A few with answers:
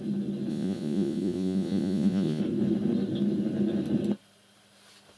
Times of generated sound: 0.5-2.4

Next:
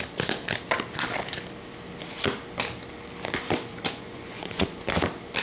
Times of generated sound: 3.7-4.8